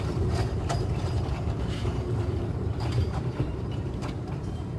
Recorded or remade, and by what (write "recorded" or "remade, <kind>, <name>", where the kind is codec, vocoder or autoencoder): remade, vocoder, BigVGAN v2